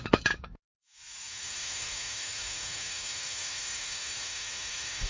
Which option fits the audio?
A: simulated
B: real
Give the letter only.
A